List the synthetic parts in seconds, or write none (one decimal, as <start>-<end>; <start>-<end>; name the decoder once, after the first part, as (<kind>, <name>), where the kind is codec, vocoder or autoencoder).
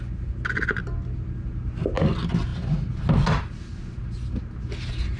none